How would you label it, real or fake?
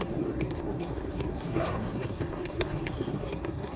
fake